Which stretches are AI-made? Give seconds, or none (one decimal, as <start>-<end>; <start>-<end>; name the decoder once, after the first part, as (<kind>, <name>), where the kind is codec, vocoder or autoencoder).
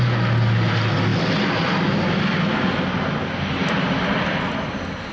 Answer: none